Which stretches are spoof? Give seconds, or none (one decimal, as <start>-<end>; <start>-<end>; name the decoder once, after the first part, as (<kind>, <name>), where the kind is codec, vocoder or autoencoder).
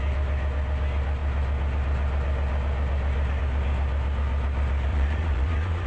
4.9-5.9 (vocoder, Vocos)